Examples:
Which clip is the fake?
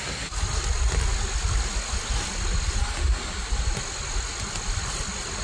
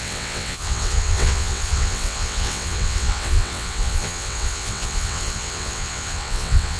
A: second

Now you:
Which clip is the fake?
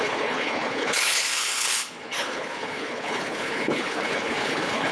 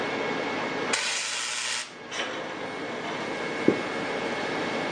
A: first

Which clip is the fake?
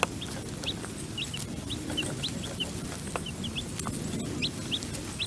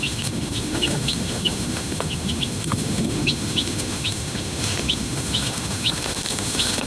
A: second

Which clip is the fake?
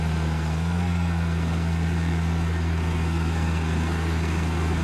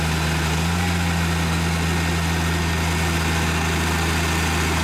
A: first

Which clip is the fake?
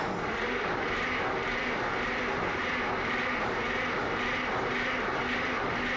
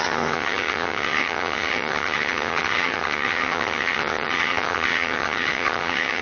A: second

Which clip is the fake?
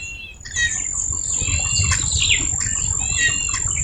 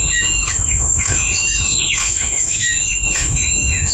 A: second